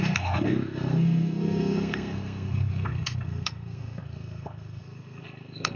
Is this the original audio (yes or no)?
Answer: no